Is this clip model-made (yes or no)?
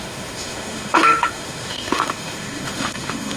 yes